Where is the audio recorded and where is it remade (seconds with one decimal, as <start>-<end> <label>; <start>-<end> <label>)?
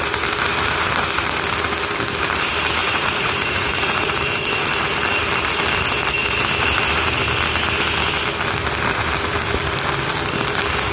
0.0-2.8 recorded; 2.8-4.2 remade; 4.2-10.9 recorded